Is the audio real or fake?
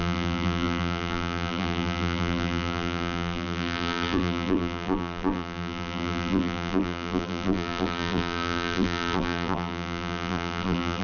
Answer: fake